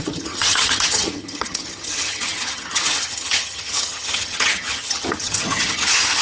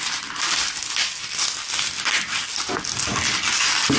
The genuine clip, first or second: second